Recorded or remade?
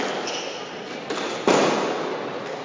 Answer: recorded